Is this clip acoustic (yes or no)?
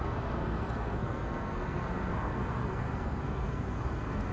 no